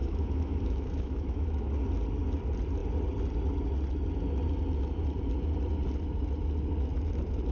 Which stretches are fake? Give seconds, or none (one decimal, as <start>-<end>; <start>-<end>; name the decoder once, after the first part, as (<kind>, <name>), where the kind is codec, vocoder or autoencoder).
0.0-1.7 (autoencoder, DAC-VAE)